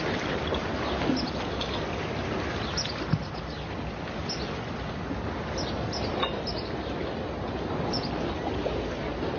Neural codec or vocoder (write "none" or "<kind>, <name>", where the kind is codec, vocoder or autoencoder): none